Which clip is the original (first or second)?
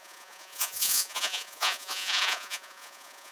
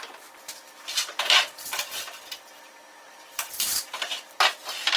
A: second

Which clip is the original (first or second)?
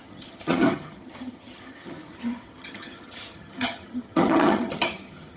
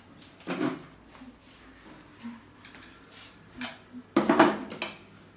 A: second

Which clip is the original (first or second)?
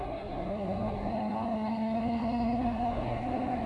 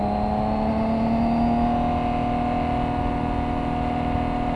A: second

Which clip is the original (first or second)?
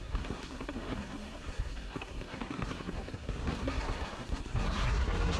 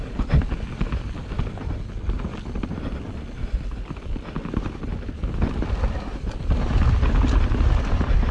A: second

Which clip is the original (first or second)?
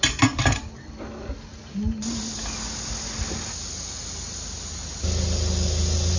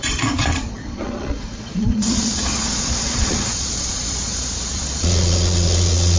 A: first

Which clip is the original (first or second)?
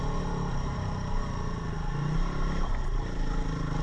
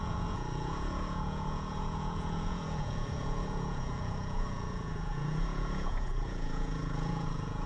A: first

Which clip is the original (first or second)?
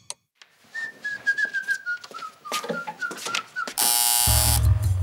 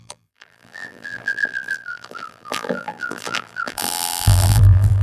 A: first